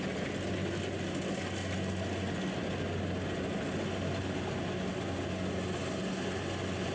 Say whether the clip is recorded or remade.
recorded